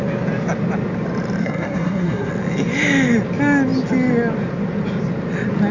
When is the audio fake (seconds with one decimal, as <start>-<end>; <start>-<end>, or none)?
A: 1.4-2.3